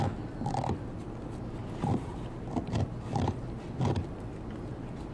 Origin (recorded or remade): recorded